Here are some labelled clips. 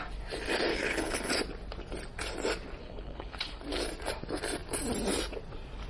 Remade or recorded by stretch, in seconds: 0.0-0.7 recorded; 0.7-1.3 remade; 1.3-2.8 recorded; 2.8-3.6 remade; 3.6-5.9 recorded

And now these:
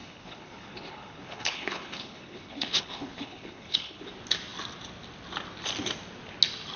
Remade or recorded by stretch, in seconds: 0.0-4.1 remade; 4.1-6.8 recorded

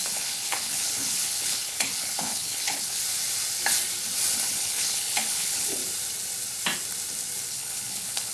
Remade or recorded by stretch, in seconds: 0.0-3.0 remade; 3.0-4.5 recorded; 4.5-5.8 remade; 5.8-7.5 recorded; 7.5-8.3 remade